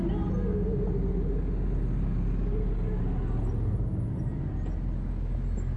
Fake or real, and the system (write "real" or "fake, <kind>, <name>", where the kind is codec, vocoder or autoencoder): real